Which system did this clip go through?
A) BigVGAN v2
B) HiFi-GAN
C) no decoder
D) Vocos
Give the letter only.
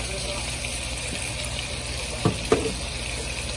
C